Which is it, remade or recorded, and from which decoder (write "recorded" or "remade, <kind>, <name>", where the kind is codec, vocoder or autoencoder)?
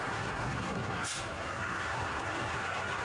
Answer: remade, codec, SNAC